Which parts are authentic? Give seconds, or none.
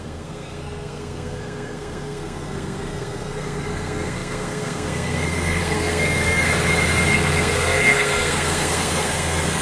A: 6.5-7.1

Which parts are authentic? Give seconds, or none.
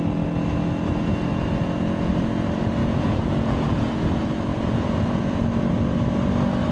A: 0.0-1.3; 2.1-2.8; 3.9-4.5; 5.4-6.7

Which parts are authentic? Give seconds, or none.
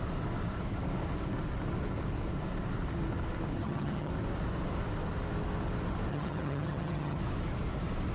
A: 0.0-3.6; 4.1-6.1; 7.2-8.1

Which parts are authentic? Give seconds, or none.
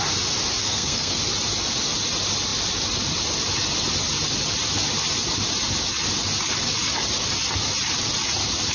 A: 0.0-0.6; 1.2-8.7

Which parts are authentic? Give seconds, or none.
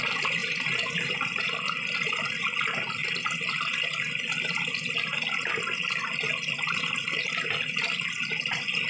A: 0.0-0.4; 1.9-8.9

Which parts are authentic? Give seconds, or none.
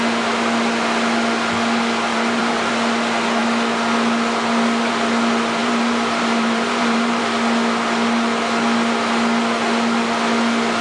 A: 0.0-2.1; 2.7-5.6; 7.2-10.8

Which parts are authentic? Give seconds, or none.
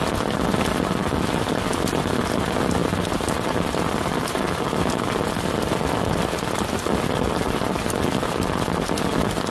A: 0.0-9.5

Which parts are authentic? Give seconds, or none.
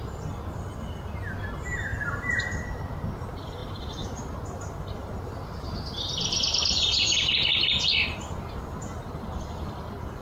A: 0.0-10.2